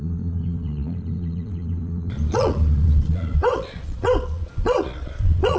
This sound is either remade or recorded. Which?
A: remade